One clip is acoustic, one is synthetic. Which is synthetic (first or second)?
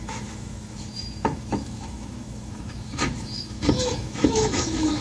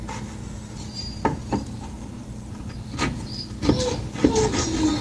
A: first